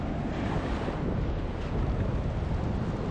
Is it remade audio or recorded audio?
recorded